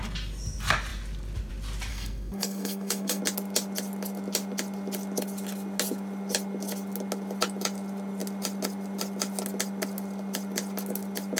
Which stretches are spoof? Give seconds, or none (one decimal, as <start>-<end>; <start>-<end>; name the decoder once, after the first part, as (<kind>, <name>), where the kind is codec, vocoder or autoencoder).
1.9-3.2 (codec, SNAC)